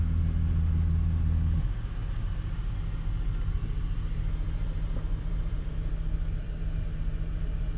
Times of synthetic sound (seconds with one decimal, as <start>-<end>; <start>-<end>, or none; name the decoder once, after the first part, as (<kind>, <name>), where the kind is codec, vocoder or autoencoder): 5.1-6.7 (vocoder, BigVGAN v2)